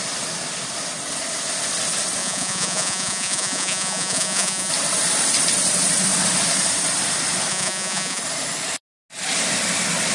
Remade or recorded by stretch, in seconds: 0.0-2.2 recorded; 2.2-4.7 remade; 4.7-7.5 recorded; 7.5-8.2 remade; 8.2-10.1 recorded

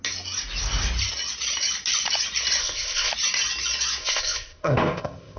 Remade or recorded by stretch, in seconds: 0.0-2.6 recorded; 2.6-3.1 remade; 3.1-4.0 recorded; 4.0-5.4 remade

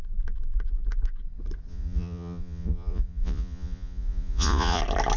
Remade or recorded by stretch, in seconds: 0.0-1.7 recorded; 1.7-4.8 remade; 4.8-5.2 recorded